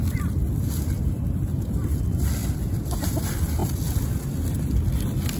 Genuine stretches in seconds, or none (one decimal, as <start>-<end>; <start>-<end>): 0.0-5.4